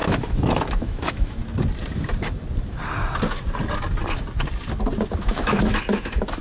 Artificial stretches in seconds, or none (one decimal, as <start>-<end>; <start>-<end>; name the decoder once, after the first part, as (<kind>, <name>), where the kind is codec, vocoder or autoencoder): 0.0-1.4 (autoencoder, DAC-VAE); 5.2-6.4